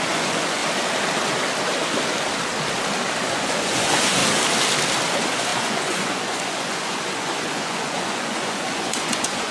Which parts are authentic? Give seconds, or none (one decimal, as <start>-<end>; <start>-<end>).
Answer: 0.6-3.3; 4.2-5.1